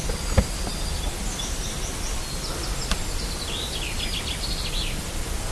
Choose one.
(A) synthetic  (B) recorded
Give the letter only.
B